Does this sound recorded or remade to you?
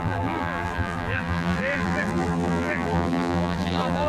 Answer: remade